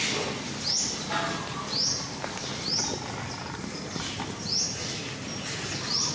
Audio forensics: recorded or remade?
recorded